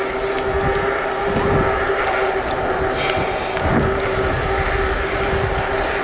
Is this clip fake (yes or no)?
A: no